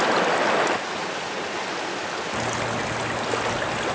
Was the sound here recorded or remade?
recorded